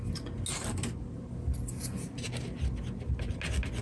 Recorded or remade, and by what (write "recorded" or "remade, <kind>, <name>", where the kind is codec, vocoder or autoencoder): recorded